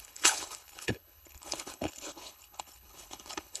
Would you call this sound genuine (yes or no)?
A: no